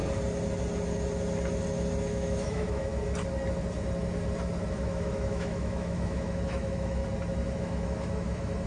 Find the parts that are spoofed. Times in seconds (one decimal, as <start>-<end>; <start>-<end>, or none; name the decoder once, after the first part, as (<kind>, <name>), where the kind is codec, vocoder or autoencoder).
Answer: 2.1-2.9 (autoencoder, DAC-VAE); 4.7-7.0; 7.5-8.7